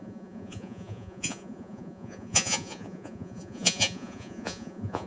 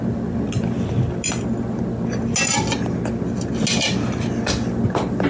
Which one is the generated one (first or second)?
first